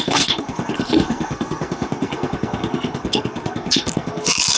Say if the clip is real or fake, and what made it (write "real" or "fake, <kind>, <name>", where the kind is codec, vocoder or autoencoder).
fake, codec, SNAC